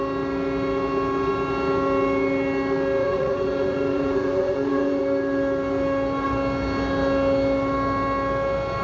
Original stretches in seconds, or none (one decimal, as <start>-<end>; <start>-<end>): 0.0-3.0; 5.0-8.8